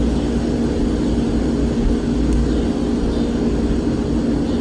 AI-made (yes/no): no